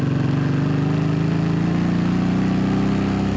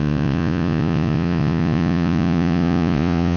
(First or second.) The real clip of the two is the first